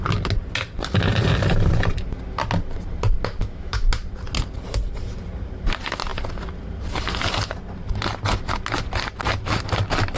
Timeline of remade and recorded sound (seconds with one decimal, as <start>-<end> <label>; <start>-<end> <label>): 0.0-3.4 recorded; 3.4-3.9 remade; 3.9-10.2 recorded